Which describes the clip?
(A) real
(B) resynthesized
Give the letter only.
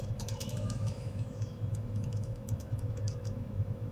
B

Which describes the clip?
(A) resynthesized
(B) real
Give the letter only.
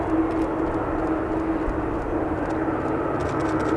B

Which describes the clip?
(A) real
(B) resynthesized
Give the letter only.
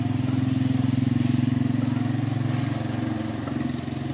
A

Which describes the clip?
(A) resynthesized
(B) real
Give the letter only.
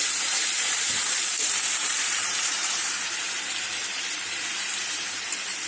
A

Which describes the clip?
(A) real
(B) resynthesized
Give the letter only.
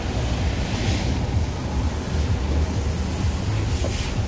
A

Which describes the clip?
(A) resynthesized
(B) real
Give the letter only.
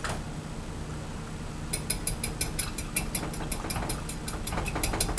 B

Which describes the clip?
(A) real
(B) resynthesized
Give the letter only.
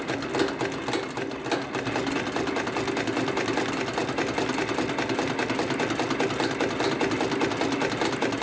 A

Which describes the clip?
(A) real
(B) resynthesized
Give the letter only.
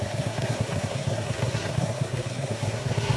B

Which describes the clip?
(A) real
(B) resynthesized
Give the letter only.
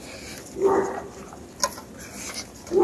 A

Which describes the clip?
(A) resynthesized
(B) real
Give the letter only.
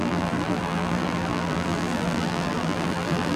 A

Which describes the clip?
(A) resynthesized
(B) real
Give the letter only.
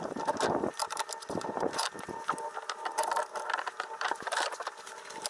A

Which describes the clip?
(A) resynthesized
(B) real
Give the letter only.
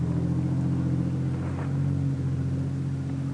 B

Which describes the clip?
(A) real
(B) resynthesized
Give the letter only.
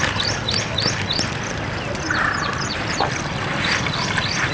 A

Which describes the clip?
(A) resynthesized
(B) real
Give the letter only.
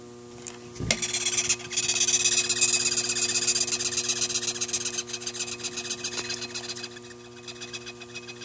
B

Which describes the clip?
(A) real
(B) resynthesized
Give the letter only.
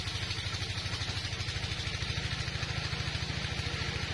A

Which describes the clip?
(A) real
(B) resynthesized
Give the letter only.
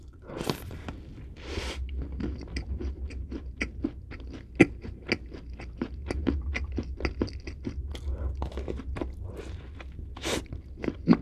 A